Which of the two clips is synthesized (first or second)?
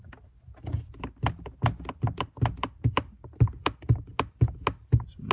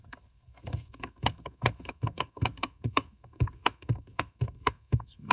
second